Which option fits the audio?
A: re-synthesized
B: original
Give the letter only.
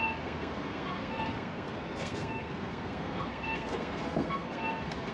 A